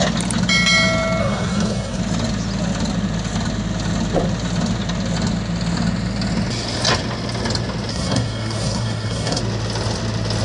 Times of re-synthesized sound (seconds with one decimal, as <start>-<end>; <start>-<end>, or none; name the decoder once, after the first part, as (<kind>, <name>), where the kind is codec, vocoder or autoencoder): 1.2-2.0 (codec, SNAC); 7.9-9.4